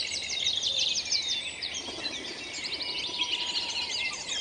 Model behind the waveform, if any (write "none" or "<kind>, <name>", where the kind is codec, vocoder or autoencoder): none